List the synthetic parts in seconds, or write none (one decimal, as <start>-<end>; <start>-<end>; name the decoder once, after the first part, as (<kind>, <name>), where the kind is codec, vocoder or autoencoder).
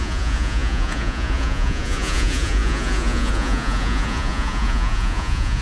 0.0-5.6 (vocoder, Vocos)